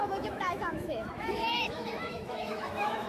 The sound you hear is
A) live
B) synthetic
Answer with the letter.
B